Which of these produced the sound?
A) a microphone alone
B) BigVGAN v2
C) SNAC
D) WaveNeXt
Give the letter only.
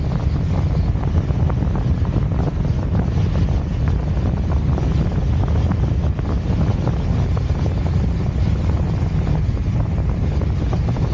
A